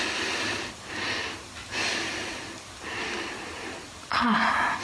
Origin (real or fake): real